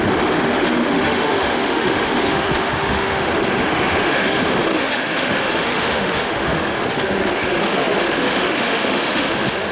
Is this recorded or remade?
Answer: remade